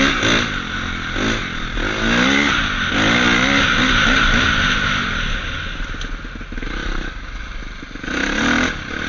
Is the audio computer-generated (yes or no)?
no